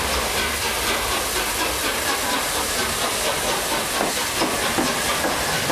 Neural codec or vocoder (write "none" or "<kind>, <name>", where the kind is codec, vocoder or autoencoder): none